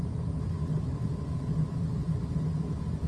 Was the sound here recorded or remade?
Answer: recorded